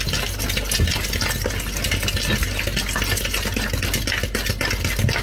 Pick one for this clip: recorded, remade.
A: recorded